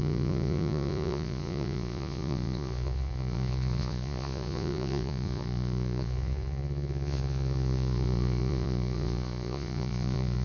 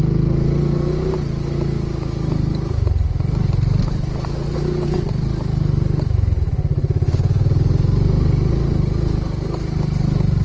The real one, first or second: second